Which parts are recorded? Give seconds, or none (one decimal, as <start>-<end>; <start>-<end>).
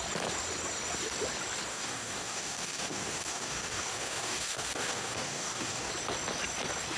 0.0-1.7; 5.9-7.0